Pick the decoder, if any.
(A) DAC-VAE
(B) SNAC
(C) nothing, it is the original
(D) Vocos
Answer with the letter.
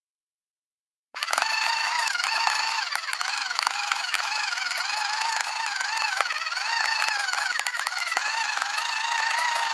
A